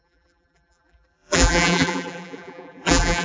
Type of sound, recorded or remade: remade